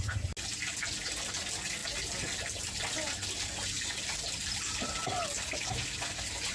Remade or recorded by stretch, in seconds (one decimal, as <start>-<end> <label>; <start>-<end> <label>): 0.0-6.5 recorded